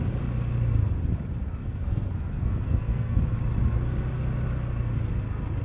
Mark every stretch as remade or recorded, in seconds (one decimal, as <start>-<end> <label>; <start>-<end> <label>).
0.0-1.6 recorded; 1.6-3.2 remade; 3.2-5.6 recorded